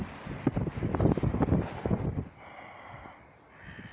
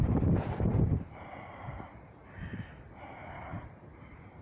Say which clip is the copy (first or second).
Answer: second